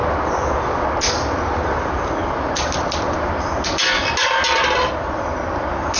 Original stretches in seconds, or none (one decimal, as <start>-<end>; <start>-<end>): 0.0-6.0

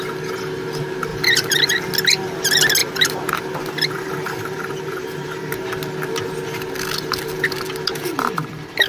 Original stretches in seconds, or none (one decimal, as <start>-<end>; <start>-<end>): 0.0-1.1; 1.7-2.8; 5.5-8.9

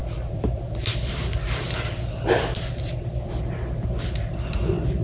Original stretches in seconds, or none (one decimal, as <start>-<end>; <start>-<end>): 3.0-5.0

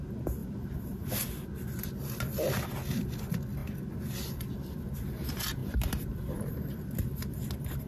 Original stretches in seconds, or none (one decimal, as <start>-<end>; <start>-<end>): 0.0-0.4; 1.1-3.6; 4.8-5.6; 6.8-7.9